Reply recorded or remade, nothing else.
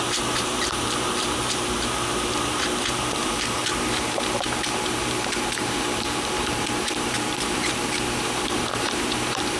remade